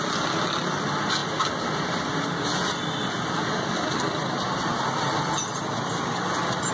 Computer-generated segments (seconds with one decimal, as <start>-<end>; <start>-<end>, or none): none